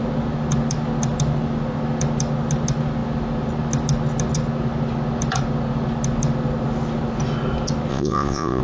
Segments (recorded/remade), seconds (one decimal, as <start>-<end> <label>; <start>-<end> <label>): 0.0-7.9 recorded; 7.9-8.6 remade